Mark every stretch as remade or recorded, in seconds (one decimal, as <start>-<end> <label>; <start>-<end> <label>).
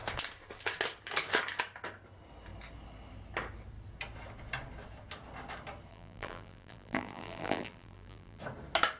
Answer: 0.0-5.9 recorded; 5.9-8.4 remade; 8.4-9.0 recorded